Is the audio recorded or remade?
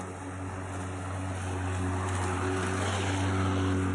recorded